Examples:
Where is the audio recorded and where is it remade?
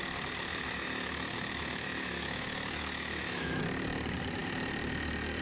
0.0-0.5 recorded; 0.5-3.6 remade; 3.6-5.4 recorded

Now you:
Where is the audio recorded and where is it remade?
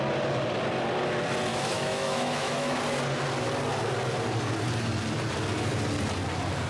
0.0-1.5 recorded; 1.5-2.8 remade; 2.8-6.7 recorded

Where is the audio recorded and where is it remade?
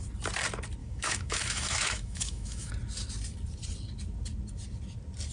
0.0-0.8 recorded; 0.8-2.7 remade; 2.7-5.3 recorded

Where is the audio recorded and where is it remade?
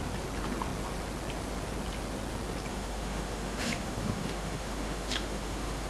0.0-2.7 recorded; 2.7-5.9 remade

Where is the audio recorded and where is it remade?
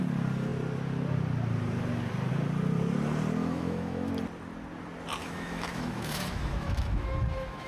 0.0-3.4 recorded; 3.4-4.1 remade; 4.1-5.2 recorded; 5.2-7.7 remade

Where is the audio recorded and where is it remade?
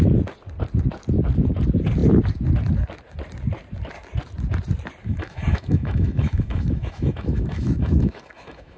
0.0-5.0 recorded; 5.0-8.8 remade